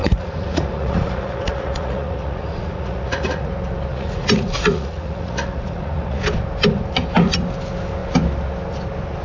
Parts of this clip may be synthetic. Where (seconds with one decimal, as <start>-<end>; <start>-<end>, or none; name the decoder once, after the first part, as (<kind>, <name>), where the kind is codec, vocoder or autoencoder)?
0.0-3.5 (vocoder, Vocos); 3.9-6.2